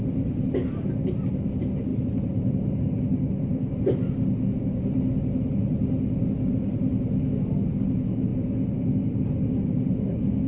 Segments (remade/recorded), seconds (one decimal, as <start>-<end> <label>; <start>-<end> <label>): 0.0-10.5 recorded